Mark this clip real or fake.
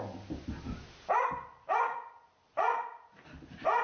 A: real